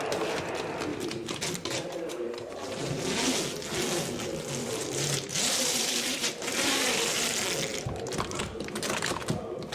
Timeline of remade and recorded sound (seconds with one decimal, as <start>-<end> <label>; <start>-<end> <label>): 0.0-0.9 recorded; 0.9-3.0 remade; 3.0-4.6 recorded; 4.6-6.9 remade; 6.9-7.7 recorded; 7.7-8.4 remade; 8.4-9.7 recorded